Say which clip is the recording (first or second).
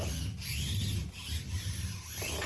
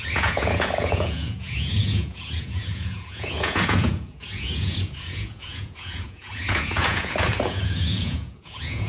first